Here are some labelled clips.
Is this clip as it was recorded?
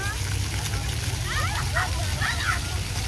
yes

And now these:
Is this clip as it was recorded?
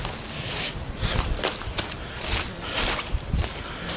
yes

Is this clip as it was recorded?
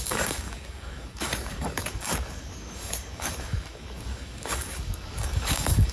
no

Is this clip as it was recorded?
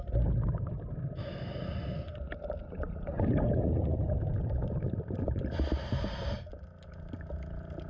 yes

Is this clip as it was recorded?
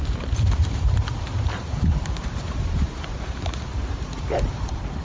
no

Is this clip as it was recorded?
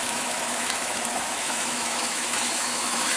no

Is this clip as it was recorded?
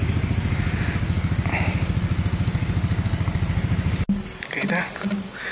yes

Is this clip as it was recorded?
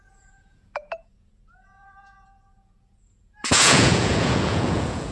no